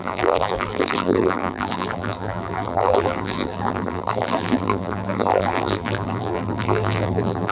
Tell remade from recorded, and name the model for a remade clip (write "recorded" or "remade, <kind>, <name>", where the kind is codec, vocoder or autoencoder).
remade, vocoder, BigVGAN v2